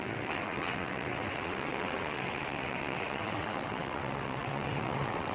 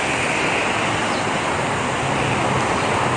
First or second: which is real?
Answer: second